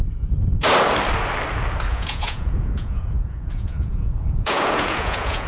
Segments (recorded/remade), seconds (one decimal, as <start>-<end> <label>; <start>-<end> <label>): 0.0-1.9 recorded; 1.9-5.5 remade